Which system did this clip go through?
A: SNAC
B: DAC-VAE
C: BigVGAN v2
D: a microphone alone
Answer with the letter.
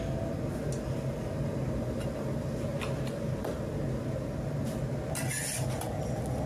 D